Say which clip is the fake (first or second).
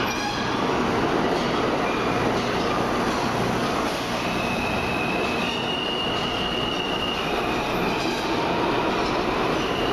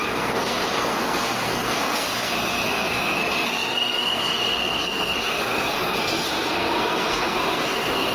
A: second